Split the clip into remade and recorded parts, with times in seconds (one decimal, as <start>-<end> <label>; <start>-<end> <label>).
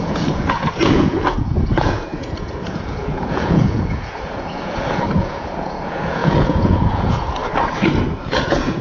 0.0-7.4 remade; 7.4-8.2 recorded; 8.2-8.8 remade